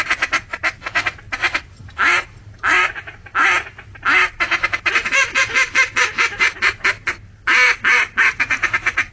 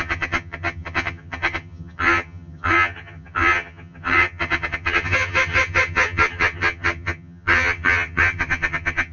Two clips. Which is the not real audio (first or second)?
second